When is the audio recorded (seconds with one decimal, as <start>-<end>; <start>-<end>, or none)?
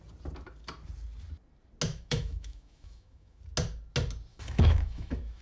0.0-1.9; 3.4-4.3